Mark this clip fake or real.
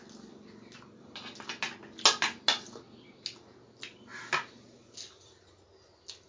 real